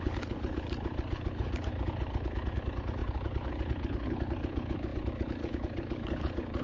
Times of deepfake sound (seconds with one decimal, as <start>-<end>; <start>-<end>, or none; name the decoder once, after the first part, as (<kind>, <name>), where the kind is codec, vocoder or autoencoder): 0.0-6.6 (codec, HILCodec)

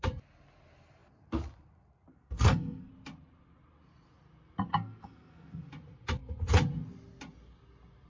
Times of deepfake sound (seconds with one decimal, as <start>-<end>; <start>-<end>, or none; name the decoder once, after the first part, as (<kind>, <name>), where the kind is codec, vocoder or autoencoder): 2.1-2.9 (codec, SNAC); 4.7-5.7